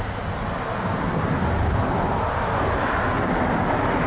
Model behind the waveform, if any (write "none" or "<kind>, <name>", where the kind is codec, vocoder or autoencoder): none